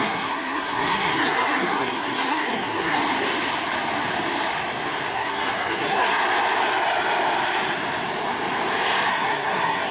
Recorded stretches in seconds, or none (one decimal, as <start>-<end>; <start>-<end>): 3.0-5.1; 6.1-9.1